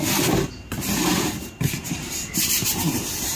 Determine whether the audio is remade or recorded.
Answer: recorded